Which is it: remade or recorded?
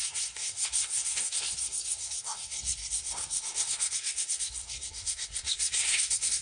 remade